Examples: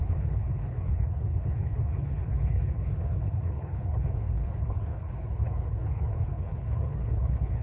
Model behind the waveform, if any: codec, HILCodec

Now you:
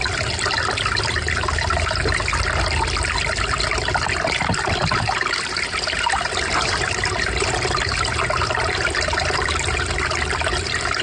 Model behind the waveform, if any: none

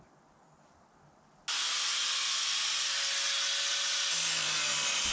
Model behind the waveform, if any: none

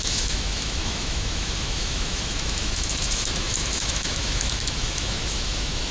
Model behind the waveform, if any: autoencoder, DAC-VAE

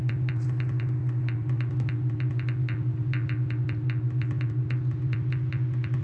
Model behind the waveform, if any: none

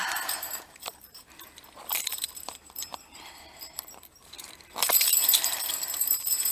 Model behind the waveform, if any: vocoder, BigVGAN v2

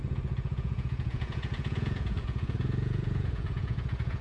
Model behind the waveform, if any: vocoder, Vocos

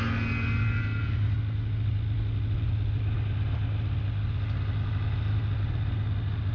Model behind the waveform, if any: none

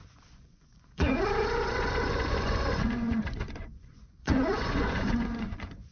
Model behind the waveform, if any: vocoder, Vocos